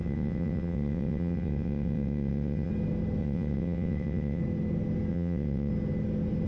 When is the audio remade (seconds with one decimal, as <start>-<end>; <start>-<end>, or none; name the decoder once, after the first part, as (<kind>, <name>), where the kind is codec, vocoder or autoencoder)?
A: 0.0-2.7 (vocoder, WaveNeXt); 3.2-4.4; 5.1-5.7